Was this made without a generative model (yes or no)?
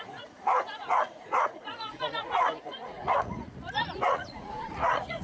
no